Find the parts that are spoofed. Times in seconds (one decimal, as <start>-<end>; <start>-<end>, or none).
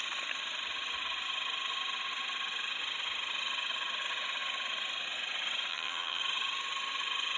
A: 5.7-6.2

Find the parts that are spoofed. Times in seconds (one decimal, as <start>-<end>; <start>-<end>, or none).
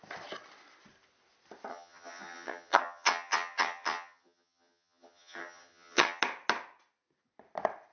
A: 1.7-6.2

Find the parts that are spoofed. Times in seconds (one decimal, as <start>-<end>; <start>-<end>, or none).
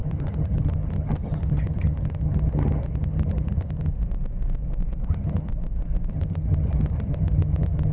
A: 0.0-3.9; 5.1-5.5; 6.1-7.9